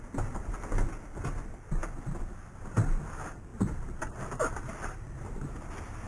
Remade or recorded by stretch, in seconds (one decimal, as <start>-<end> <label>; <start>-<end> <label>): 0.0-6.1 recorded